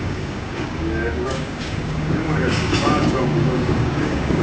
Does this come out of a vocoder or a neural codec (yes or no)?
yes